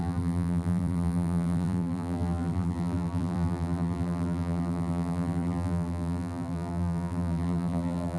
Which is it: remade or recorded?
remade